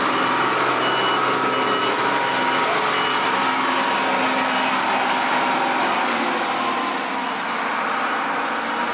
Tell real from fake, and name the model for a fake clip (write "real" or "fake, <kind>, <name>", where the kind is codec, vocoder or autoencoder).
real